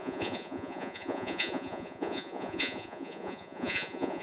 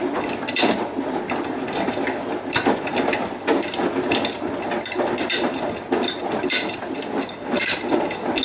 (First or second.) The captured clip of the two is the second